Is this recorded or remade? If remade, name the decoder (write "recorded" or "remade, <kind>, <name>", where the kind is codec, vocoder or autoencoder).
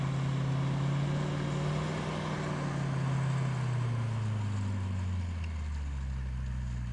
recorded